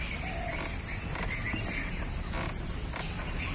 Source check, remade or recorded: recorded